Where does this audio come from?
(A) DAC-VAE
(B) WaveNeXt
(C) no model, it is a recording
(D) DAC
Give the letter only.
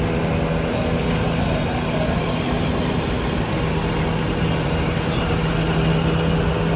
C